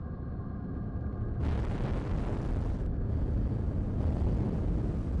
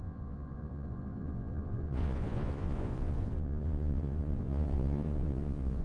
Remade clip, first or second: second